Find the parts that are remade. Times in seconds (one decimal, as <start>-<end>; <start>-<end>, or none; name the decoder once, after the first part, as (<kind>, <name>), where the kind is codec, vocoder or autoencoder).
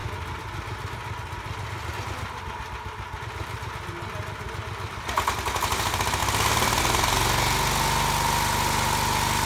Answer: none